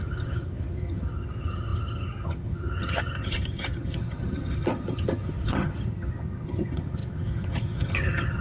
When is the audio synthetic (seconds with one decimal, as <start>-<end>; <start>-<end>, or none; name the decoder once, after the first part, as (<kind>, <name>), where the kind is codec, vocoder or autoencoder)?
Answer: 0.0-8.4 (vocoder, HiFi-GAN)